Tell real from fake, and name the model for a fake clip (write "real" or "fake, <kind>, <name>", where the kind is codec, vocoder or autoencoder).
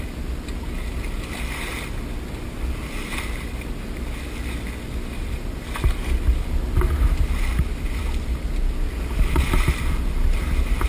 real